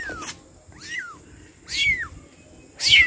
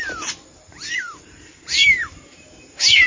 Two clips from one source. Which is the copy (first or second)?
second